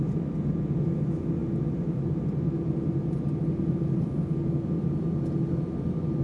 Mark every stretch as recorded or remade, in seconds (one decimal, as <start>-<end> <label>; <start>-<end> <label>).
0.0-6.2 recorded